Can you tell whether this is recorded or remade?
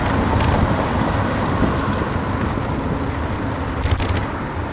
recorded